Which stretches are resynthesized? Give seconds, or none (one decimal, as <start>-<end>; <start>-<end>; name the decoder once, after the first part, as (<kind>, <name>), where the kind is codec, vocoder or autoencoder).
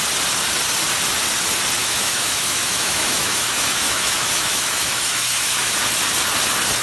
1.8-5.7 (autoencoder, DAC-VAE)